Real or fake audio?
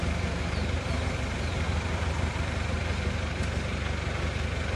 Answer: real